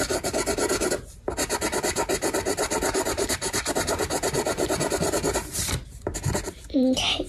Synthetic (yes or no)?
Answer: yes